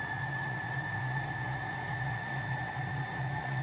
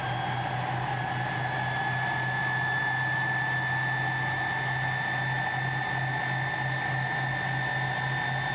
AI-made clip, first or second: first